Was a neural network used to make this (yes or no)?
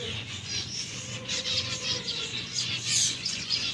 yes